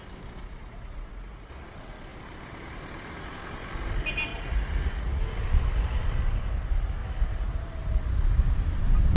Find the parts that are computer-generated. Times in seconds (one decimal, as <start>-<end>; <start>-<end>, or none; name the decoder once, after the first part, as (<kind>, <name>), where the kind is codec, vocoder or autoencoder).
0.4-1.5 (vocoder, Vocos); 4.3-5.2